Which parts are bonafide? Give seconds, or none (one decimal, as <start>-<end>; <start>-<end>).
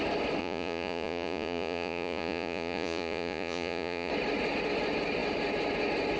0.0-0.4; 4.1-6.2